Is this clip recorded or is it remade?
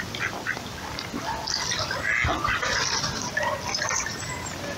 recorded